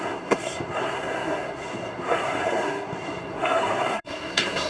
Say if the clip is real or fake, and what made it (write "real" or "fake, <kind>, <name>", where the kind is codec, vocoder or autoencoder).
fake, codec, SNAC